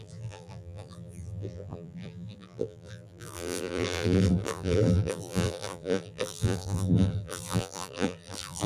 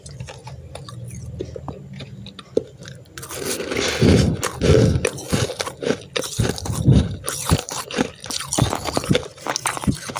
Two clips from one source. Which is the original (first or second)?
second